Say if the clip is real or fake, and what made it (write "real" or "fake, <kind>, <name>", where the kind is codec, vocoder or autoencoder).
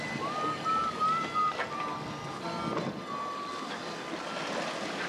real